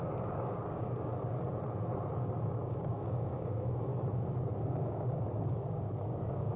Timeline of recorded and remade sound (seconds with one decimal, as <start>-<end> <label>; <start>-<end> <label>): 0.0-1.1 remade; 1.1-2.6 recorded; 2.6-3.9 remade; 3.9-4.7 recorded; 4.7-6.6 remade